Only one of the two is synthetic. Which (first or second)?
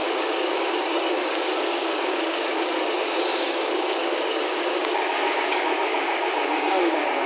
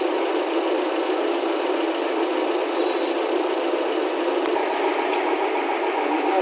first